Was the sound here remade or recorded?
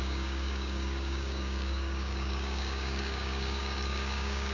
remade